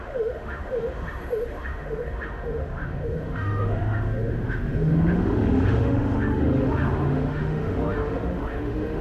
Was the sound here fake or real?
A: fake